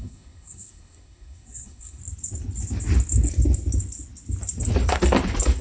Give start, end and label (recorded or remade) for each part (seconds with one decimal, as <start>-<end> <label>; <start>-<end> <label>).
0.0-2.0 remade; 2.0-5.6 recorded